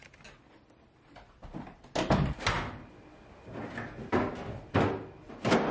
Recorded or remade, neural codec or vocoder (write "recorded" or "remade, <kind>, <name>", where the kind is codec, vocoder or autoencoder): recorded